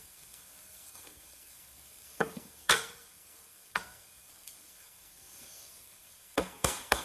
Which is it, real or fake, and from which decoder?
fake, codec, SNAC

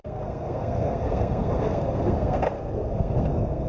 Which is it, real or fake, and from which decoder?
fake, codec, SNAC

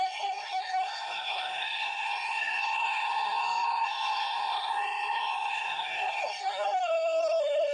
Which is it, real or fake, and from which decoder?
fake, codec, SNAC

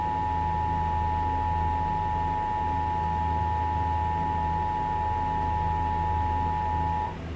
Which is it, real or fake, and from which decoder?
real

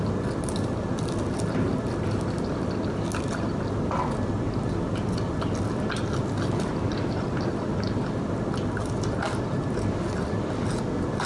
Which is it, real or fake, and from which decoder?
real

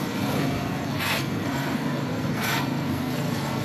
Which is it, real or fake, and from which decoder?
fake, codec, SNAC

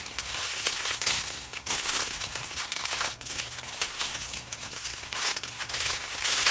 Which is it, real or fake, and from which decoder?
fake, codec, SNAC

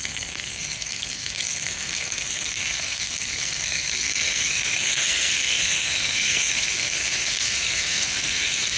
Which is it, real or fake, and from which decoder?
fake, codec, SNAC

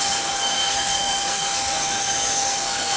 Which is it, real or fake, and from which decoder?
fake, codec, SNAC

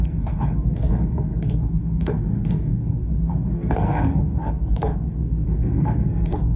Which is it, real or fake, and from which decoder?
fake, codec, SNAC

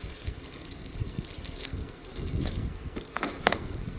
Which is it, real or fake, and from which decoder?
fake, codec, SNAC